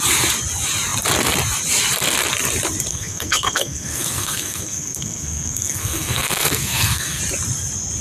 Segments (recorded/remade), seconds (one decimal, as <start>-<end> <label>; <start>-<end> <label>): 0.0-2.9 recorded; 2.9-7.2 remade; 7.2-8.0 recorded